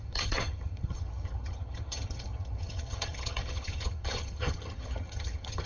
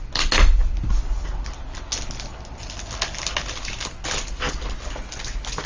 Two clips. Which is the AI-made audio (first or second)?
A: first